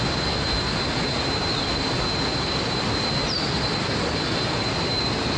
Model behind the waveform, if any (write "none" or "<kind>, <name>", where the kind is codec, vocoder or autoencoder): none